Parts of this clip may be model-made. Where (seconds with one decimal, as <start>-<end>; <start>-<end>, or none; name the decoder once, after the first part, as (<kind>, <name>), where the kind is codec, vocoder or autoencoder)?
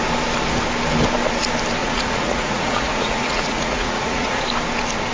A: 1.8-4.4 (vocoder, Vocos)